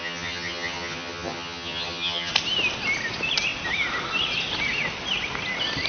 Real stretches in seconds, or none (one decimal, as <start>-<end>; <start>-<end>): 2.3-5.9